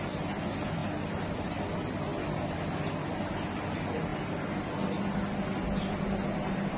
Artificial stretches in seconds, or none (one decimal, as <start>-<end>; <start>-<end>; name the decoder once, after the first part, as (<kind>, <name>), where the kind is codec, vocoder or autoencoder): none